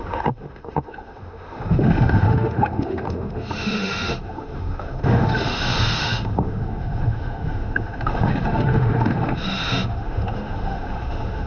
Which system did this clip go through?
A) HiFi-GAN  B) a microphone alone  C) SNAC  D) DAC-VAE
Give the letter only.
D